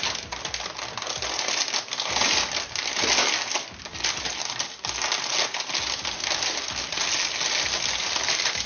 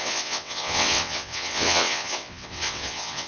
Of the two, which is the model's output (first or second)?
second